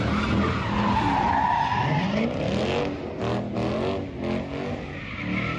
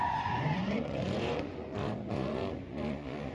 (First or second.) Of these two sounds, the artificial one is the second